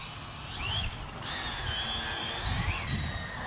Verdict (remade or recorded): recorded